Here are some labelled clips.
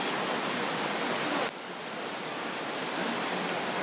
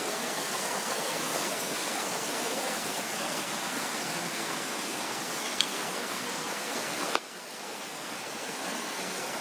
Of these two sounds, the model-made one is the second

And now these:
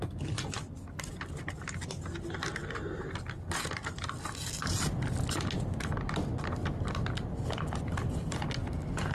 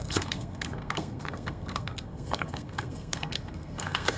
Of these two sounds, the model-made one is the second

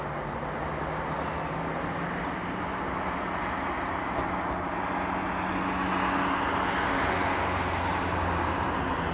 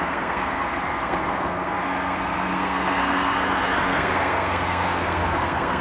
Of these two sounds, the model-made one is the second